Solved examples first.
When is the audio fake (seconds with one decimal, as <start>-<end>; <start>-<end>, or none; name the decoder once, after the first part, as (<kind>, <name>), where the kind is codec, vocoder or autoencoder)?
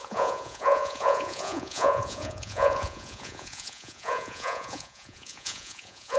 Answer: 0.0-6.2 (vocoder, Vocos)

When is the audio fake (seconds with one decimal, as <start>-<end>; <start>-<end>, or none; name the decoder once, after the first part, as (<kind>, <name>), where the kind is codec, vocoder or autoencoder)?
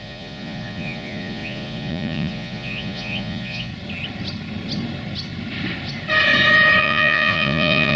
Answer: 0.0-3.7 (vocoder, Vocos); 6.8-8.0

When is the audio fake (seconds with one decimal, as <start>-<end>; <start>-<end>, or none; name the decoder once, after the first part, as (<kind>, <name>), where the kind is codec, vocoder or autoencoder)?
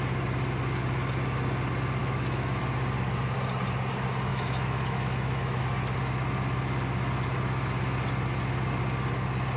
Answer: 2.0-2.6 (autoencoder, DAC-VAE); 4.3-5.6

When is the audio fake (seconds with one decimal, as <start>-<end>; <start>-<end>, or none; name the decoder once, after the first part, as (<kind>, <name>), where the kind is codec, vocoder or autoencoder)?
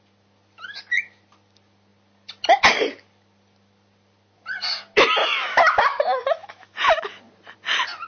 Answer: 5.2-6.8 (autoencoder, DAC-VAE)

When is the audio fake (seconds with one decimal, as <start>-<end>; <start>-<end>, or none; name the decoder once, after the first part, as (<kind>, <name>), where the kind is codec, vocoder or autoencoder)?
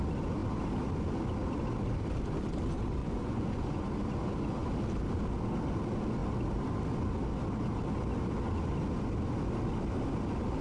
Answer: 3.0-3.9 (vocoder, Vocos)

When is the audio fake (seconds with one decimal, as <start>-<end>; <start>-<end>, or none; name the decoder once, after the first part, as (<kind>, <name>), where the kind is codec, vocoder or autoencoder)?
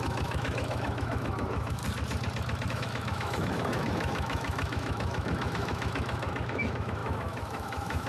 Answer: 0.0-1.8 (autoencoder, DAC-VAE); 2.7-8.1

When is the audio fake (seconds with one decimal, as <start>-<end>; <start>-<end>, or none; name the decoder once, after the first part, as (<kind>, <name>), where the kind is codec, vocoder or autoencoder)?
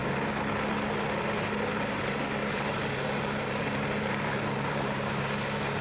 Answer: 1.7-5.2 (vocoder, BigVGAN v2)